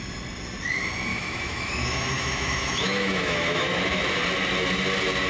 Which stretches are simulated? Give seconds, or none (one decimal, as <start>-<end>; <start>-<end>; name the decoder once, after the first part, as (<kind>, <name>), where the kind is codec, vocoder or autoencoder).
1.1-4.0 (autoencoder, DAC-VAE)